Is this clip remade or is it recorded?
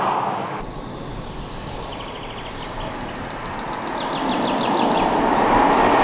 recorded